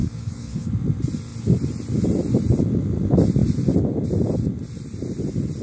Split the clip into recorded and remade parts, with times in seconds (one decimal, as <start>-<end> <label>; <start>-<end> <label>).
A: 0.0-0.7 remade; 0.7-5.6 recorded